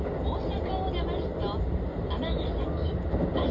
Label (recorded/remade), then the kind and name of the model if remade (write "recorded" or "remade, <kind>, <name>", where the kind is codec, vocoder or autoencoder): recorded